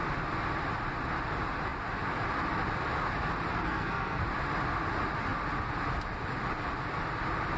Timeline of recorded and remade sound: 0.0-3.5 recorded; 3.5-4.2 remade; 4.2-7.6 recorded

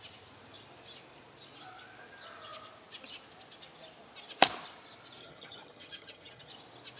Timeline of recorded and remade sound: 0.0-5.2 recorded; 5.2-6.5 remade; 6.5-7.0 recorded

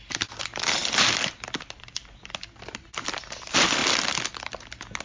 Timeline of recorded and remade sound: 0.0-5.0 recorded

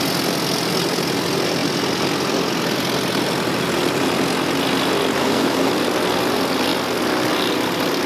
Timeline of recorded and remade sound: 0.0-5.2 recorded; 5.2-5.7 remade; 5.7-8.1 recorded

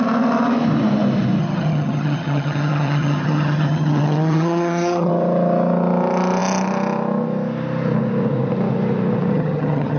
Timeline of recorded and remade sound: 0.0-1.4 recorded; 1.4-5.1 remade; 5.1-9.3 recorded; 9.3-10.0 remade

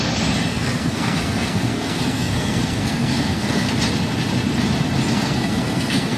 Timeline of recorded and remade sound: 0.0-0.5 recorded; 0.5-3.7 remade; 3.7-5.1 recorded; 5.1-6.2 remade